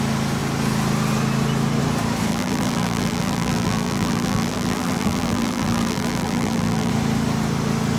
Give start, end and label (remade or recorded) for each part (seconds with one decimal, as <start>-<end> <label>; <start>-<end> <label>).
0.0-2.3 recorded; 2.3-6.9 remade; 6.9-8.0 recorded